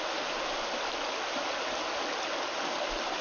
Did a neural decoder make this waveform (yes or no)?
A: no